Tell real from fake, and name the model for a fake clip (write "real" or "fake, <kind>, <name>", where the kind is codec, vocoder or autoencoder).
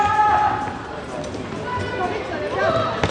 real